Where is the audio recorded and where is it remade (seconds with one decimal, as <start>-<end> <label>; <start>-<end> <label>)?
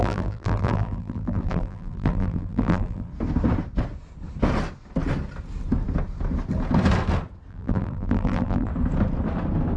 0.0-3.1 remade; 3.1-7.5 recorded; 7.5-8.7 remade; 8.7-9.8 recorded